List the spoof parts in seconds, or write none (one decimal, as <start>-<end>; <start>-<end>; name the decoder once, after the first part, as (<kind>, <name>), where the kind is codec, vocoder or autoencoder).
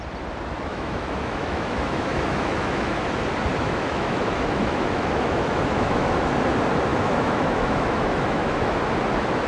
0.7-3.0 (autoencoder, DAC-VAE); 3.5-6.4; 6.9-8.8